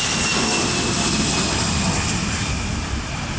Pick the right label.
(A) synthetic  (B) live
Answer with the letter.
B